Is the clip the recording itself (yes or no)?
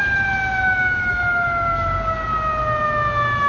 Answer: yes